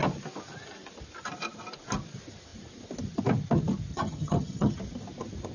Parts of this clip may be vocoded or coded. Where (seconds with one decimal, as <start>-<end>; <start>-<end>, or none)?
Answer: 3.9-4.8